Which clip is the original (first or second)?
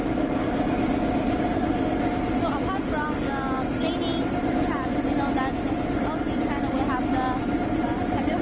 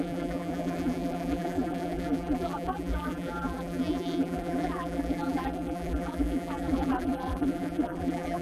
first